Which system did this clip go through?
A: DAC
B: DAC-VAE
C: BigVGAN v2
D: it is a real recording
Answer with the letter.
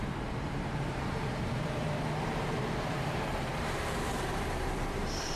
C